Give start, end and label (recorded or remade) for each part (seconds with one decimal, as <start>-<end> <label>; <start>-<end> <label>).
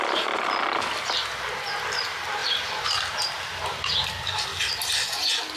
0.0-2.4 recorded; 2.4-3.8 remade; 3.8-4.5 recorded; 4.5-5.1 remade; 5.1-5.6 recorded